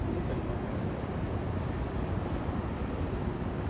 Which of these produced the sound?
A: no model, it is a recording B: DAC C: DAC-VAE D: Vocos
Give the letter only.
A